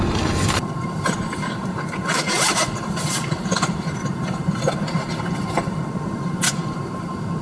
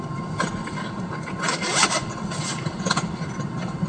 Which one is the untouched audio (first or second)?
second